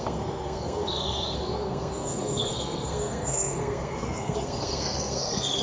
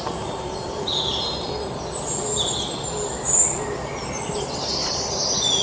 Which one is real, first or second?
second